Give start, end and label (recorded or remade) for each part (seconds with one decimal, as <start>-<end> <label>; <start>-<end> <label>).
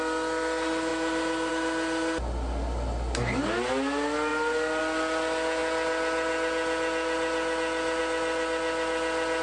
0.0-9.4 recorded